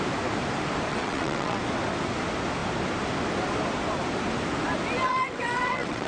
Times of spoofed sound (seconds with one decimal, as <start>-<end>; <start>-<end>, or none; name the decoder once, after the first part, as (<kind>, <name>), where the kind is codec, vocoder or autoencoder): 0.9-1.6 (vocoder, WaveNeXt); 5.0-6.1